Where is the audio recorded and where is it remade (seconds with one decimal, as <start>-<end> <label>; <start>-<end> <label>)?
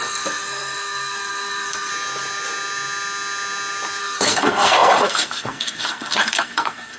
0.0-1.9 remade; 1.9-4.0 recorded; 4.0-7.0 remade